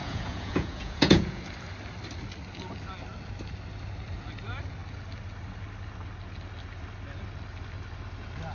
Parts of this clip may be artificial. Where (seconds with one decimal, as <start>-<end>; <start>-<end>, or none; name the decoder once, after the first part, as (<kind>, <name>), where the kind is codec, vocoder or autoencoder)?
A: 0.0-1.4 (vocoder, Vocos)